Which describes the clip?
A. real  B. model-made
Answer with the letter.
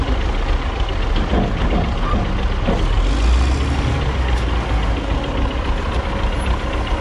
A